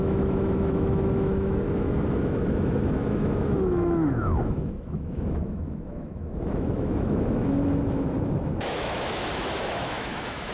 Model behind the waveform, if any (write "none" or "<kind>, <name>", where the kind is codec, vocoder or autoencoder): autoencoder, DAC-VAE